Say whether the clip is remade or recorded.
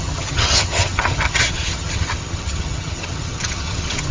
remade